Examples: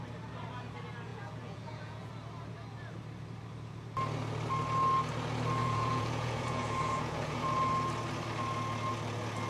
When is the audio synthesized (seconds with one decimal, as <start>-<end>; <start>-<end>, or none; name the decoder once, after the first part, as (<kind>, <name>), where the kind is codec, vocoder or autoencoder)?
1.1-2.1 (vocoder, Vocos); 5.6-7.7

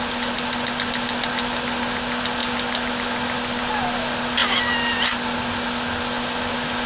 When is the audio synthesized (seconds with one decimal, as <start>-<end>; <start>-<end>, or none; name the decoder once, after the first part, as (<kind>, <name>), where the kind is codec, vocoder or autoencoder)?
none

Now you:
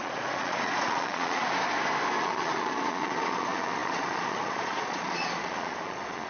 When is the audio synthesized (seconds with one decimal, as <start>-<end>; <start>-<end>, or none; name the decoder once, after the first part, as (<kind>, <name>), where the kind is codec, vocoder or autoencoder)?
0.0-1.4 (vocoder, Vocos); 2.2-6.3

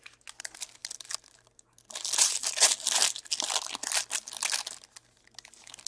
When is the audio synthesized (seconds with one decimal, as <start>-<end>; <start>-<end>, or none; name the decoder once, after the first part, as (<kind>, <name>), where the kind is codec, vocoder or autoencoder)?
none